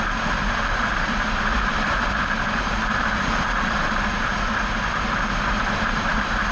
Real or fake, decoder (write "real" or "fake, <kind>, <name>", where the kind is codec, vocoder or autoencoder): fake, vocoder, BigVGAN v2